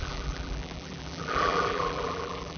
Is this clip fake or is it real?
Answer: fake